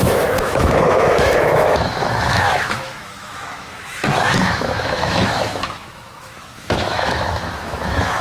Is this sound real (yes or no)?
no